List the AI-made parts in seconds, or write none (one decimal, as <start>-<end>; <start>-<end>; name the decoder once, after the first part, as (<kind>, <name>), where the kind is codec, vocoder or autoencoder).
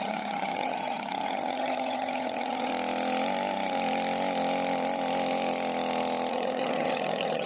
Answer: 0.0-2.7 (vocoder, HiFi-GAN); 6.3-7.5